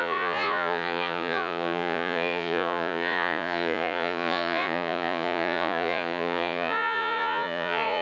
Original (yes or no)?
no